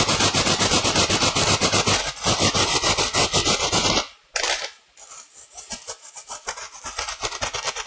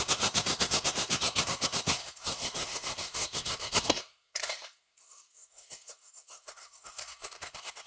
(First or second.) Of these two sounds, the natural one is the first